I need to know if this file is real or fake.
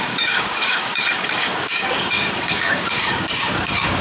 fake